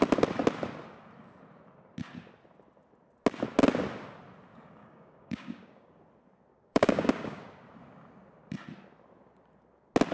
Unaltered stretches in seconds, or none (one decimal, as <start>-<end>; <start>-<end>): 0.0-4.8; 6.0-6.5; 7.4-10.1